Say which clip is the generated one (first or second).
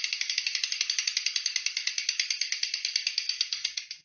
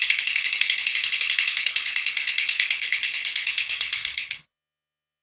second